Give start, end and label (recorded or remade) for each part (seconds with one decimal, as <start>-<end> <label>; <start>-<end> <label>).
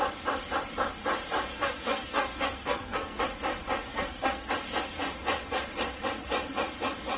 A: 0.0-1.5 recorded; 1.5-3.2 remade; 3.2-3.9 recorded; 3.9-4.5 remade; 4.5-7.2 recorded